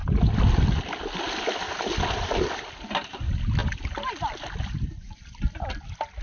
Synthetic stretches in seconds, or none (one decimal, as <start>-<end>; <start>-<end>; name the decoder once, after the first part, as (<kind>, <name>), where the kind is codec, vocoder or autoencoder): 3.6-4.4 (vocoder, BigVGAN v2)

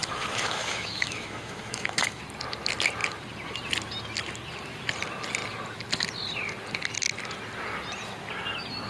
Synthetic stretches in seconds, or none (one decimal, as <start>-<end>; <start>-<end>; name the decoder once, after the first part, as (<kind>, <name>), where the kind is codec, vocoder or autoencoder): 0.0-2.2 (autoencoder, DAC-VAE)